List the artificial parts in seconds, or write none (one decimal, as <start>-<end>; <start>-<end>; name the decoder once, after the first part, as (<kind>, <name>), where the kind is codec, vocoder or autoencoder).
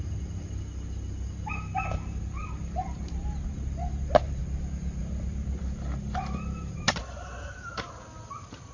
none